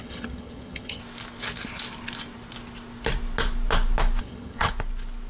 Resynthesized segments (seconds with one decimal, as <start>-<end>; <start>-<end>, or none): 0.0-1.0; 4.2-4.7